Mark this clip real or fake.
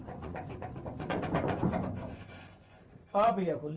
fake